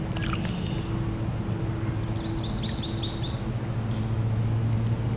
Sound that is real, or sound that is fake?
real